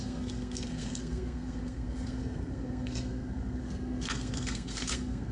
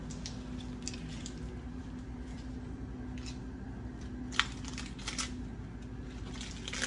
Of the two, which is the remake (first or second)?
first